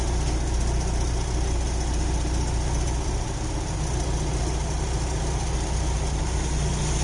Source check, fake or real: real